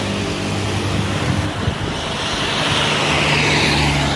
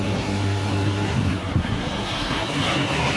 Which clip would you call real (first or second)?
first